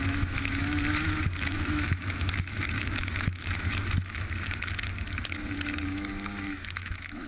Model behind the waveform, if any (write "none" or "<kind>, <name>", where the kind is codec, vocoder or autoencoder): autoencoder, DAC-VAE